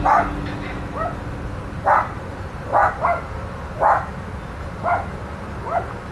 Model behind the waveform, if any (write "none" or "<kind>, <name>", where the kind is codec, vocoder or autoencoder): none